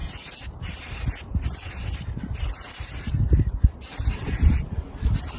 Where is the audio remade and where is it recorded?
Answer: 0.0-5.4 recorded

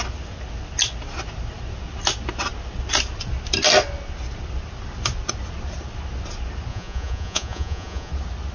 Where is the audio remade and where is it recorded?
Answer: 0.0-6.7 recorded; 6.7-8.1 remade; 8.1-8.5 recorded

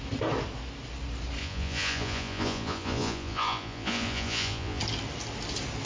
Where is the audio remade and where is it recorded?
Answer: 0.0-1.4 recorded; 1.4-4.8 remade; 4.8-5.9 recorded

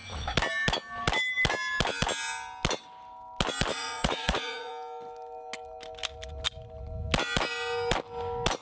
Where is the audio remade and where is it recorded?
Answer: 0.0-3.7 recorded; 3.7-4.7 remade; 4.7-8.6 recorded